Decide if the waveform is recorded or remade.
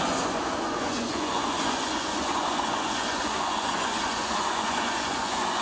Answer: remade